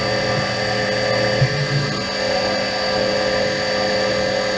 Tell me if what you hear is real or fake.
real